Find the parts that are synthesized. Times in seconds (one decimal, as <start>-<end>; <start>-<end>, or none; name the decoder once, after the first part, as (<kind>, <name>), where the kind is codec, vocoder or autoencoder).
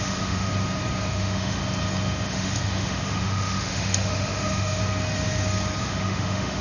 0.0-0.5 (autoencoder, DAC-VAE); 1.1-1.6; 2.3-4.8; 5.8-6.6